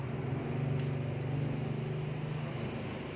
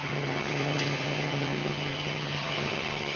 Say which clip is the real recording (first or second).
first